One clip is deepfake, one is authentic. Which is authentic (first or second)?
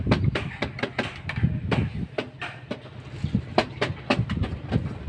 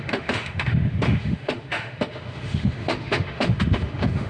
first